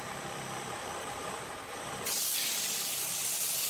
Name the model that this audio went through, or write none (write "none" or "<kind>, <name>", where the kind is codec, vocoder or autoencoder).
none